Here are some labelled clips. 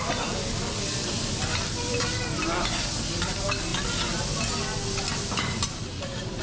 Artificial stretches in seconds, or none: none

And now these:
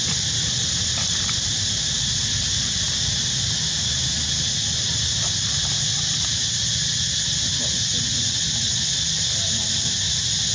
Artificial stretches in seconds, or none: 7.9-8.4 (vocoder, Vocos)

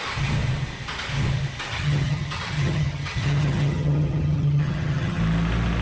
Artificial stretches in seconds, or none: 1.7-5.2 (vocoder, HiFi-GAN)

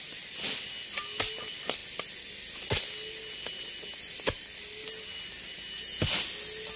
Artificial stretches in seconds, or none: none